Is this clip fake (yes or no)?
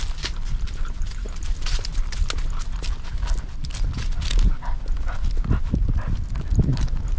no